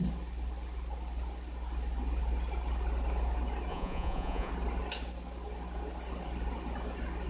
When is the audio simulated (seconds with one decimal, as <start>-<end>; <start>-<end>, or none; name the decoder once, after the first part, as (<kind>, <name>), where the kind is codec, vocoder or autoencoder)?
3.7-4.5 (vocoder, Vocos)